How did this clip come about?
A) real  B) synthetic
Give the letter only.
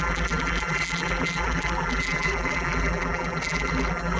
B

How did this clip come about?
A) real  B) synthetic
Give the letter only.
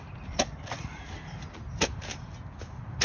A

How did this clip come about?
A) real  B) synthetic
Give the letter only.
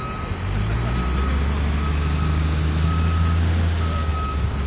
A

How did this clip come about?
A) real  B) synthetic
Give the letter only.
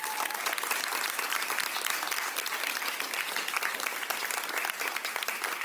B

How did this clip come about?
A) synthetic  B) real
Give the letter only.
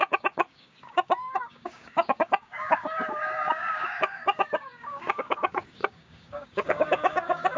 A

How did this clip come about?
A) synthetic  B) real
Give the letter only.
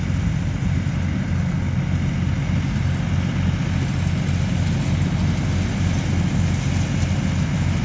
B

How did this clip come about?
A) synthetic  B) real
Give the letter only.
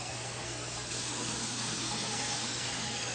A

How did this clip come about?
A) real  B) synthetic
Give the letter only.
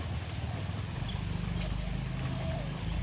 A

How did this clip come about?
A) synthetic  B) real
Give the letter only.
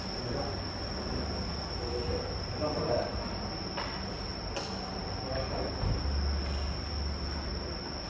B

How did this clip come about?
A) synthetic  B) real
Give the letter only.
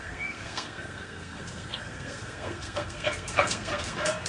A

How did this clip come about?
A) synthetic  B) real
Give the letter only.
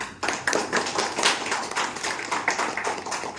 B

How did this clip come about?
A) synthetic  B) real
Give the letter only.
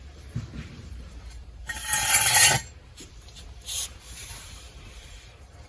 A